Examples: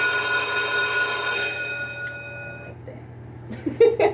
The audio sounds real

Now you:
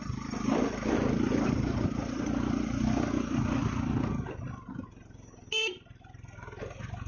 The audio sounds real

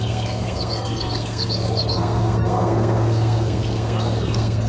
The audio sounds fake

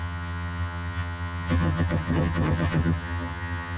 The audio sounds fake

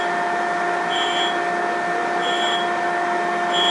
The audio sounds real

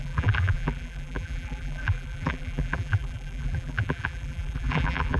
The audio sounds fake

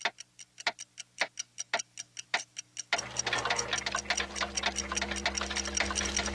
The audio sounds real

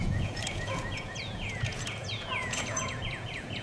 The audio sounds fake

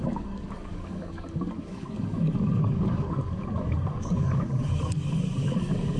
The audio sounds fake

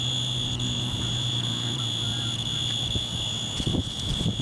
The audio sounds fake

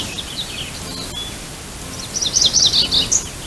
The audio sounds real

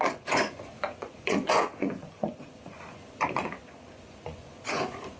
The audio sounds fake